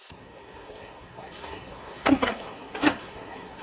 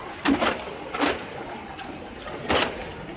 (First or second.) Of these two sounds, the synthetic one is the first